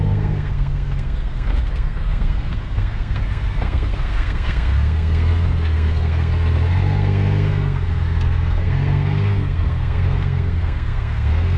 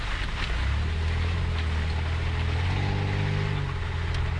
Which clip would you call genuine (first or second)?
second